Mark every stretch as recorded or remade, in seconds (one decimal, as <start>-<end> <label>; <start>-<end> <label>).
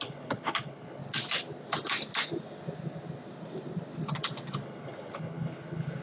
0.0-1.0 remade; 1.0-4.6 recorded; 4.6-6.0 remade